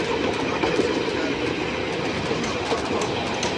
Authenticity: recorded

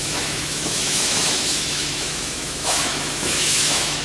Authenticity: remade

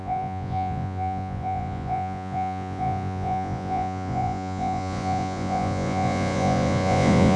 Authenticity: remade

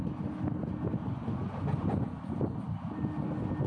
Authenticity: recorded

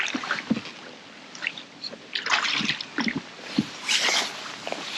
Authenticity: recorded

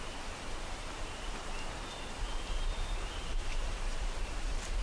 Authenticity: remade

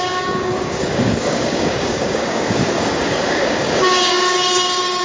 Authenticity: remade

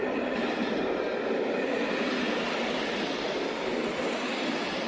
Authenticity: recorded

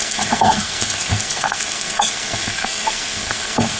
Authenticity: remade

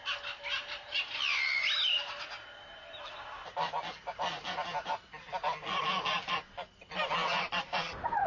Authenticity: recorded